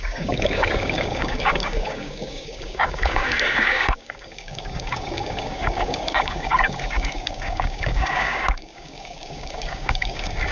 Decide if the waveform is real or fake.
fake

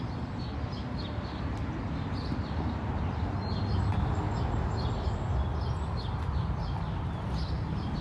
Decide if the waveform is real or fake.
real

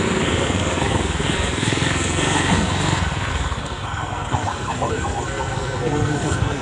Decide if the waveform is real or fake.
fake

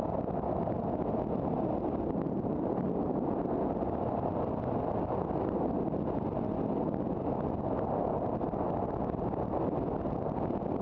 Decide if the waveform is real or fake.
real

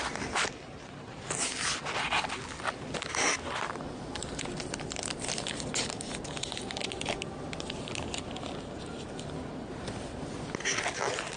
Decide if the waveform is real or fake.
real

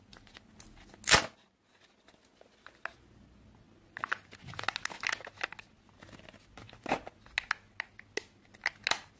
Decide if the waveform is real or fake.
real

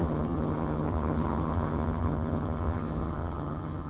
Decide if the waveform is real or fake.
fake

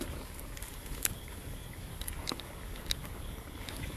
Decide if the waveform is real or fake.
fake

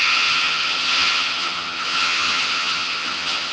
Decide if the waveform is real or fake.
fake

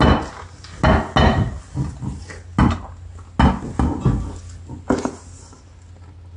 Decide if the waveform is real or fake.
real